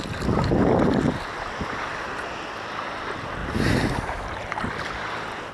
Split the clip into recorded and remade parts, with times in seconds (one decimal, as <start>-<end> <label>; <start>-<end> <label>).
0.0-5.5 recorded